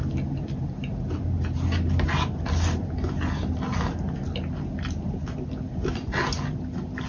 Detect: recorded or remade recorded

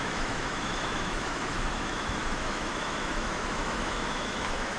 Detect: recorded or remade remade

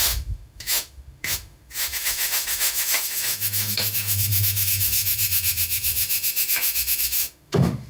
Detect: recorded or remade remade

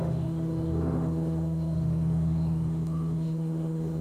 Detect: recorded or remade remade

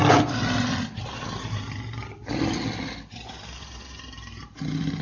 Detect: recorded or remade recorded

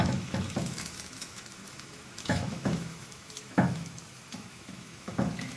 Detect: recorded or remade remade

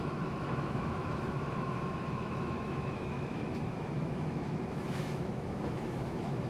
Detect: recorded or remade remade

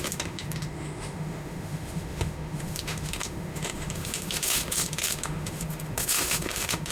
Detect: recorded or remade remade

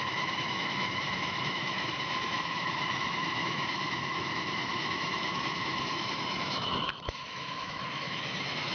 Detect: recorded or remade remade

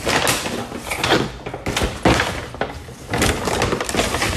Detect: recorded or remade recorded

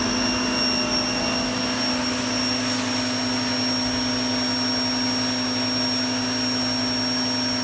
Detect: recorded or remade recorded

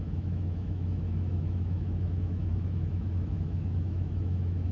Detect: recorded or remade remade